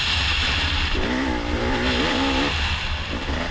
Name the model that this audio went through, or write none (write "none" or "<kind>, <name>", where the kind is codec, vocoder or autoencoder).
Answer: none